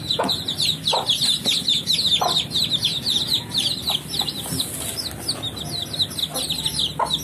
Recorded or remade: recorded